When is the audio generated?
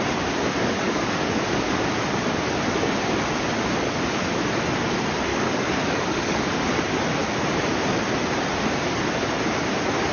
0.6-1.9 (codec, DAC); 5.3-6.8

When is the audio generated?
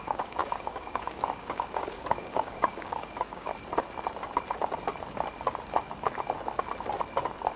0.0-3.5 (codec, DAC)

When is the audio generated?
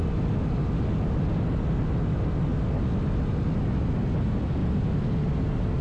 none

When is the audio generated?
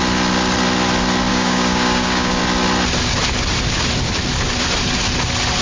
1.3-2.4 (codec, DAC)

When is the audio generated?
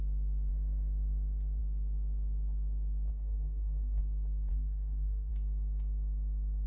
3.1-4.0 (codec, DAC); 4.5-5.3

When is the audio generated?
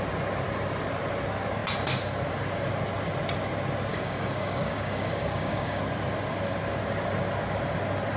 3.9-5.8 (codec, DAC)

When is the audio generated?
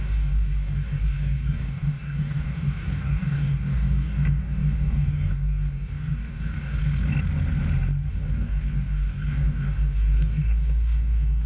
0.0-6.8 (codec, DAC); 8.1-11.5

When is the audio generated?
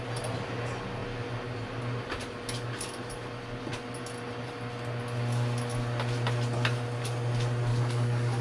7.7-8.4 (codec, DAC)